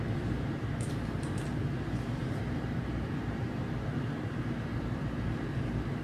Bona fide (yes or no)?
no